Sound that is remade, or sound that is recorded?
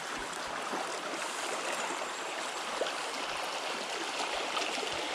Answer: recorded